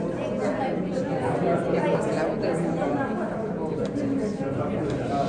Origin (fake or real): real